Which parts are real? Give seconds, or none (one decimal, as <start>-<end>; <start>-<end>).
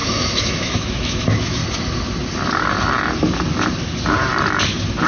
1.6-5.1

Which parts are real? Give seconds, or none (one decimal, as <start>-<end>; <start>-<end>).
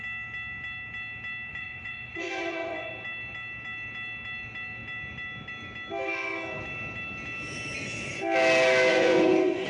0.0-1.5; 2.9-8.9